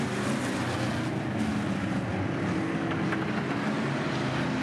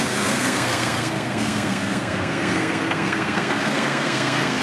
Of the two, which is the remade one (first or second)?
second